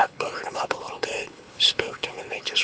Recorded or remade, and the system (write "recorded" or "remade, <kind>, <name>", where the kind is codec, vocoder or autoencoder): remade, codec, HILCodec